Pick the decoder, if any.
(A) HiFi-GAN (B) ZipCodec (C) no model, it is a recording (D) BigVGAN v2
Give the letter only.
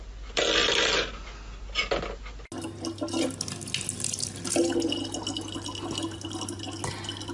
C